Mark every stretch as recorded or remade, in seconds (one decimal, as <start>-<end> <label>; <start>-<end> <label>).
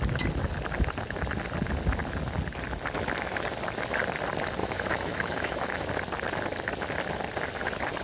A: 0.0-4.6 recorded; 4.6-5.8 remade; 5.8-8.0 recorded